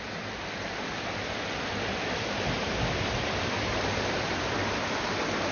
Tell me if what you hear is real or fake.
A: real